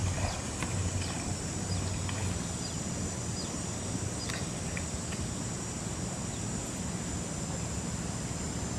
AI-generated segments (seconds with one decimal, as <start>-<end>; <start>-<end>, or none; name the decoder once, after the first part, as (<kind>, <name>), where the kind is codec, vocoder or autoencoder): none